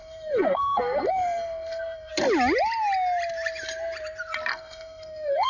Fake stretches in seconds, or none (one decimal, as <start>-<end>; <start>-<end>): 0.0-2.1; 4.5-5.5